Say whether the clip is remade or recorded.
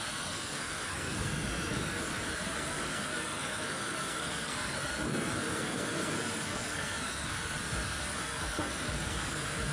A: remade